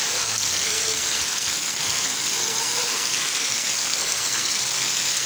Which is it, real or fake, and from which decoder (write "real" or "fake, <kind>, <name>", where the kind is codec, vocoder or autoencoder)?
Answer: fake, codec, SNAC